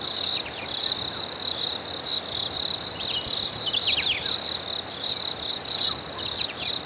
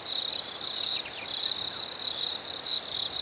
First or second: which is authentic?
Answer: first